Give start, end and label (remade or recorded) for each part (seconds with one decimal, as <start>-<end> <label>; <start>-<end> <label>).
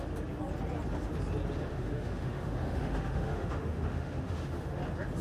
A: 0.0-1.7 recorded; 1.7-4.8 remade; 4.8-5.2 recorded